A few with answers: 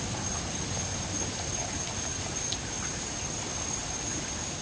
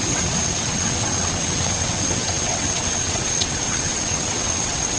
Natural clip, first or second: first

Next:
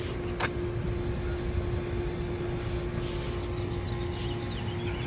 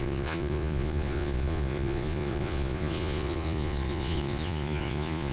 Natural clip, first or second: first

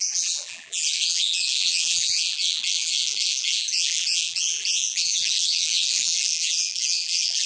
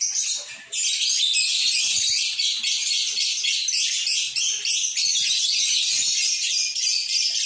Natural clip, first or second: second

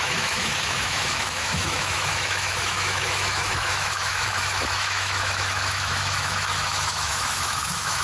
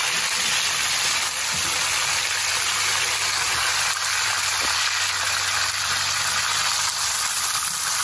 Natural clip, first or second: second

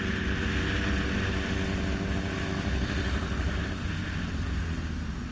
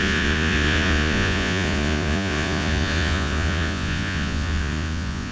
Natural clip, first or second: first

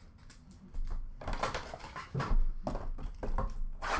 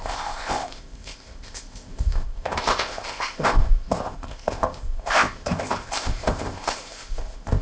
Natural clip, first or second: first